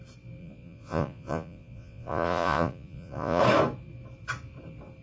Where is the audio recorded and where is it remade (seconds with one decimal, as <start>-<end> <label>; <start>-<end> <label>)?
0.0-0.4 recorded; 0.4-3.4 remade; 3.4-5.0 recorded